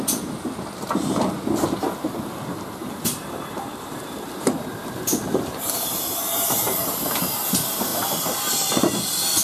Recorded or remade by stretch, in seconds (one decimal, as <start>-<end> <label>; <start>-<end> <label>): 0.0-2.8 recorded; 2.8-7.0 remade; 7.0-9.4 recorded